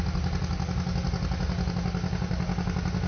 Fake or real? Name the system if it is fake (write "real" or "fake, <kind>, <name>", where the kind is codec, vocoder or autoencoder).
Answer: real